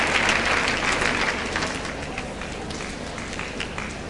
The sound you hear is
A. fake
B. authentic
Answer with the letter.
B